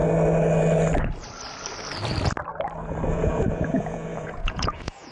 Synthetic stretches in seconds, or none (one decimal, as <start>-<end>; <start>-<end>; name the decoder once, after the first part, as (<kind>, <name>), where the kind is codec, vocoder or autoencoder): 3.1-5.1 (vocoder, Vocos)